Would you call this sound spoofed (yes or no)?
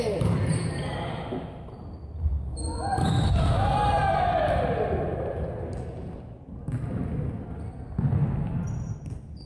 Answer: no